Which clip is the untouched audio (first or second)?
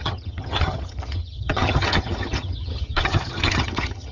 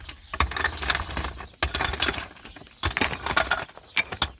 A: second